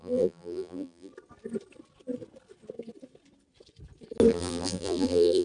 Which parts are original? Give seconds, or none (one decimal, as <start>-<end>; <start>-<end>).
1.1-4.3